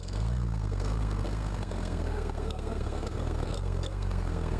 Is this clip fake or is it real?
fake